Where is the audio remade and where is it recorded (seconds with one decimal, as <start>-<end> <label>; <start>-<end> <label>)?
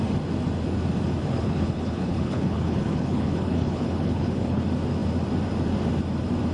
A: 0.0-1.2 recorded; 1.2-4.6 remade; 4.6-6.5 recorded